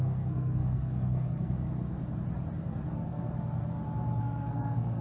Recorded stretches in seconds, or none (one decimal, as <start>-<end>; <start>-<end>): 2.0-2.9; 3.7-4.2

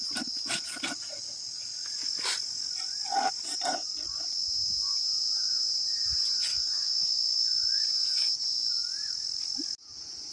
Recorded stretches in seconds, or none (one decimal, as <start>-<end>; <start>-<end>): 0.0-6.5; 7.8-10.3

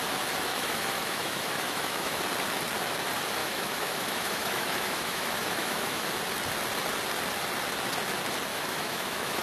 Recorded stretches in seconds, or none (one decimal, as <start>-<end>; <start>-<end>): 0.0-0.5; 2.2-3.4; 6.1-8.5